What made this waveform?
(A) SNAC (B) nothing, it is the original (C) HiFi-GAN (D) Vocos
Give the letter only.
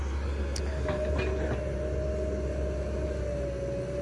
B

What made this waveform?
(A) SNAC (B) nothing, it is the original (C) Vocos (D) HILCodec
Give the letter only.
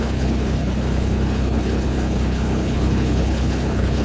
D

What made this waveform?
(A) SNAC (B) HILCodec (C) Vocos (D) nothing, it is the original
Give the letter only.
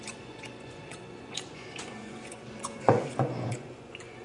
C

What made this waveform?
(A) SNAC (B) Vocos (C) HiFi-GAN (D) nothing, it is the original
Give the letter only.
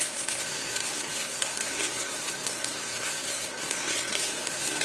A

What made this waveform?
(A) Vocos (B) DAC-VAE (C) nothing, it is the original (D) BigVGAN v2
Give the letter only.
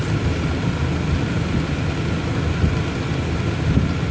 C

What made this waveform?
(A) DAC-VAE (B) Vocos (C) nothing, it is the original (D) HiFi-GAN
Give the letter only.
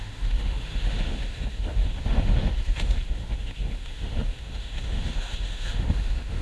A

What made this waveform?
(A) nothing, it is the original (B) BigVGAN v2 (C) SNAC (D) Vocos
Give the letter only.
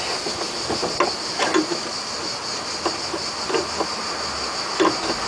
A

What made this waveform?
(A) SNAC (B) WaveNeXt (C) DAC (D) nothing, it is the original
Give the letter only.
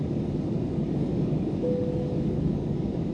C